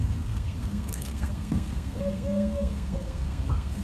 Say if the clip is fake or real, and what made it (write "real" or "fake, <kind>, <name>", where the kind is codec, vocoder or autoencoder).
fake, codec, SNAC